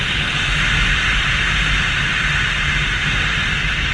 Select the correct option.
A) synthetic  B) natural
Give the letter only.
B